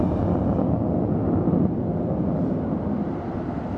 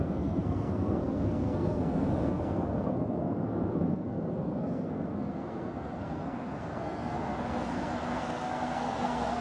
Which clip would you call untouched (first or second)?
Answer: first